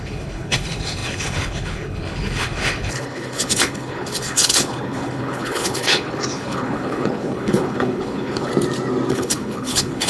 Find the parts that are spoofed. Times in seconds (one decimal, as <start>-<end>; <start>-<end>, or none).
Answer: 0.0-8.5; 9.1-10.1